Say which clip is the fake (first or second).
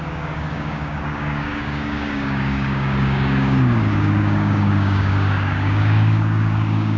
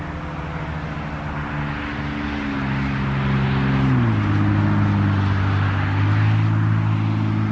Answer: first